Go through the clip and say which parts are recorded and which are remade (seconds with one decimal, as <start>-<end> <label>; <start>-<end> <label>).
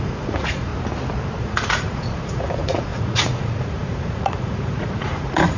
0.0-0.7 remade; 0.7-1.4 recorded; 1.4-5.6 remade